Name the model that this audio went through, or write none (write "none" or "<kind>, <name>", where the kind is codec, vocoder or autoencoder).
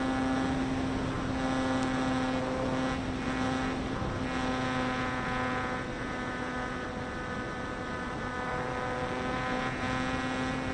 none